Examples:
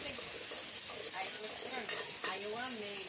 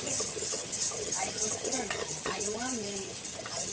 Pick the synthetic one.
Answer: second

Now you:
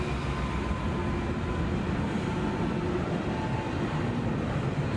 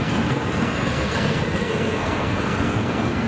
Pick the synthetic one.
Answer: second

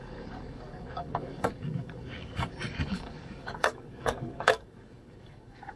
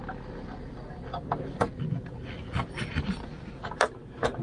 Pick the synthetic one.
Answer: first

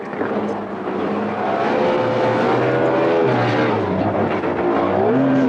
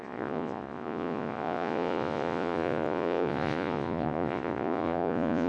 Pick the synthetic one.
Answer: second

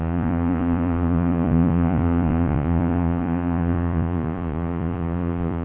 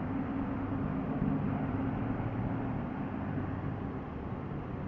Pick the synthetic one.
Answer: first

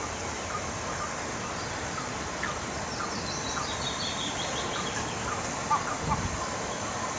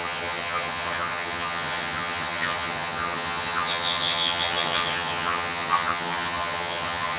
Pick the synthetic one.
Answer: second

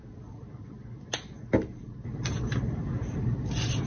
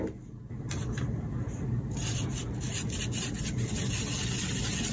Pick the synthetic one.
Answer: first